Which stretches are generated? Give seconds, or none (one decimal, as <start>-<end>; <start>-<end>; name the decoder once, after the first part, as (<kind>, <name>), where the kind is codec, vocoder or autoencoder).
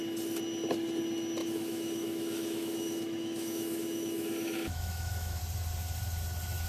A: 1.4-5.4 (autoencoder, DAC-VAE)